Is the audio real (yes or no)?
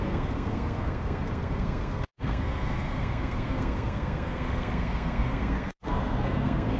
no